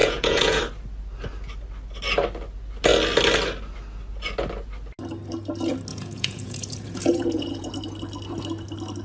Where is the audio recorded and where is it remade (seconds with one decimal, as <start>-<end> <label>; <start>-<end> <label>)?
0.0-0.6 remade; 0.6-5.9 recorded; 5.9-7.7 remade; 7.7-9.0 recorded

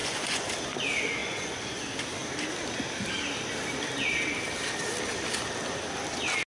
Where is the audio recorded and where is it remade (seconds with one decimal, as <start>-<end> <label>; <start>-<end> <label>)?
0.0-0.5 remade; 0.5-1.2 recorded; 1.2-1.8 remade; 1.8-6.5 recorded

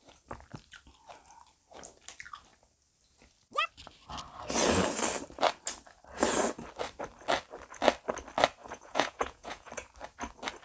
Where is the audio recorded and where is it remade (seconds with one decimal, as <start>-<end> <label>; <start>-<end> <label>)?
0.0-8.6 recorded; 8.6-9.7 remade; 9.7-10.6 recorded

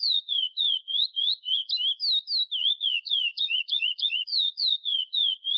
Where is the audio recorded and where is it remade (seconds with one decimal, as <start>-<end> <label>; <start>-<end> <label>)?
0.0-1.6 remade; 1.6-2.6 recorded; 2.6-5.6 remade

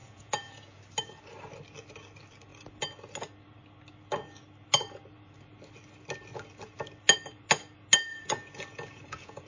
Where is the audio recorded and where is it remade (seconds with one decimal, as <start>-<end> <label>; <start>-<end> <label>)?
0.0-0.8 remade; 0.8-8.1 recorded; 8.1-9.5 remade

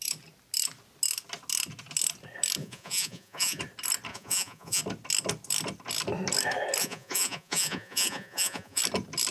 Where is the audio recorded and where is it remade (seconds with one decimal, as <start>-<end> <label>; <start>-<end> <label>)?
0.0-2.6 recorded; 2.6-3.6 remade; 3.6-4.1 recorded; 4.1-4.8 remade; 4.8-6.8 recorded; 6.8-8.8 remade; 8.8-9.3 recorded

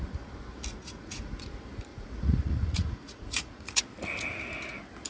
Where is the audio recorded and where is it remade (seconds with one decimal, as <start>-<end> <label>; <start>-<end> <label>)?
0.0-0.7 recorded; 0.7-1.5 remade; 1.5-1.9 recorded; 1.9-3.8 remade; 3.8-5.1 recorded